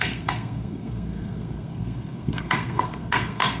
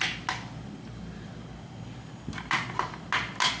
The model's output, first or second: first